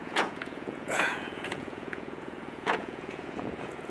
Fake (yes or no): yes